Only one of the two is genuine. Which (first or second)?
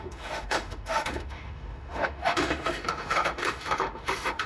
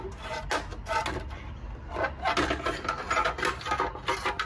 second